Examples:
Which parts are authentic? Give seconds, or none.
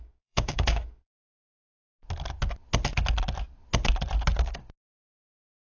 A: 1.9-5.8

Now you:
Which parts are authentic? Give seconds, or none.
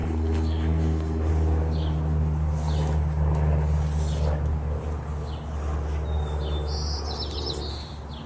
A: 1.3-8.3